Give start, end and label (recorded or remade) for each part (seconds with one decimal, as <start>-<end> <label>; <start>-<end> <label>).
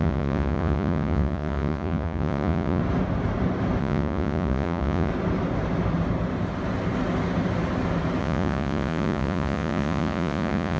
0.0-2.8 remade; 2.8-3.8 recorded; 3.8-5.1 remade; 5.1-8.2 recorded; 8.2-10.8 remade